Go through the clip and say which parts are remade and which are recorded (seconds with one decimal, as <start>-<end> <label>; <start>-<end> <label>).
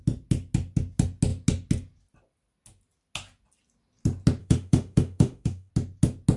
0.0-4.4 recorded; 4.4-5.7 remade; 5.7-6.4 recorded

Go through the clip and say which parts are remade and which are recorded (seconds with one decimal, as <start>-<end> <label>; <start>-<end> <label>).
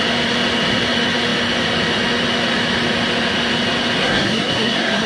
0.0-4.0 recorded; 4.0-5.1 remade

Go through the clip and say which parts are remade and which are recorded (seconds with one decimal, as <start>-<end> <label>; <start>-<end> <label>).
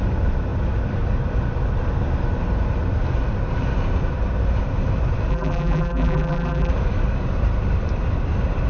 0.0-5.3 recorded; 5.3-6.7 remade; 6.7-8.7 recorded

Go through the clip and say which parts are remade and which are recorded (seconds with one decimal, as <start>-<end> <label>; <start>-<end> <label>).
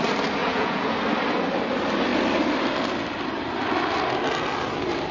0.0-0.4 recorded; 0.4-0.9 remade; 0.9-5.1 recorded